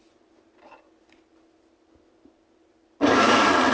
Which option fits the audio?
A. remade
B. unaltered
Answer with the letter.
B